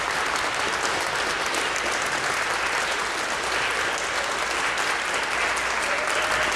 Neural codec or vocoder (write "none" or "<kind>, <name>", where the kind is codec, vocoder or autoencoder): none